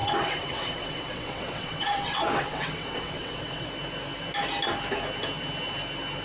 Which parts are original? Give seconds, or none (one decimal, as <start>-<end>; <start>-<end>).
3.7-6.2